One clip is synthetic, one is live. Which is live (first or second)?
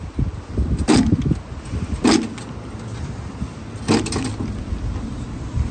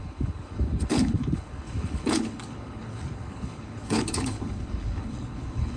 first